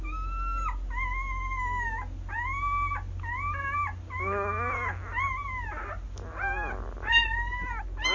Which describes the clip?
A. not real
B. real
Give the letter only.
B